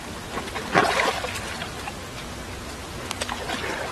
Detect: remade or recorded recorded